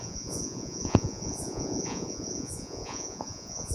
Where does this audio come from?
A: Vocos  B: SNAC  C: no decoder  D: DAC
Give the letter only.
A